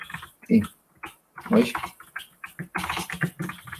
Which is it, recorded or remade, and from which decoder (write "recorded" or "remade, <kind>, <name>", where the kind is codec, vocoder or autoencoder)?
recorded